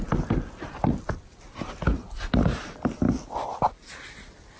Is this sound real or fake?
real